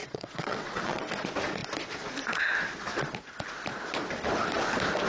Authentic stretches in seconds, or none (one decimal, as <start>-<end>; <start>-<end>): 1.1-5.1